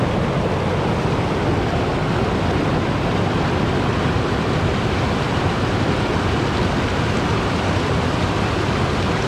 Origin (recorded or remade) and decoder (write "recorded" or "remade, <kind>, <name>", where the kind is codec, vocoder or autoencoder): recorded